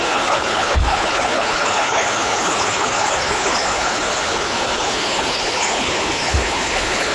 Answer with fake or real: fake